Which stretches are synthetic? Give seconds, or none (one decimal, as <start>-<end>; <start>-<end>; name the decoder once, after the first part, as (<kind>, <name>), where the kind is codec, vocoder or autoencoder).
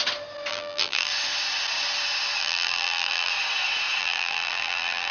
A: 0.5-1.1 (vocoder, BigVGAN v2); 2.4-3.3; 4.0-5.1